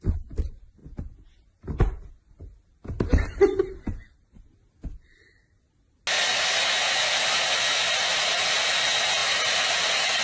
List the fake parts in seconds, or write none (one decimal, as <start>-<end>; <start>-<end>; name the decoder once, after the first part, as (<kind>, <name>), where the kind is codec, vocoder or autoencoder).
8.1-8.6 (vocoder, BigVGAN v2); 9.2-10.2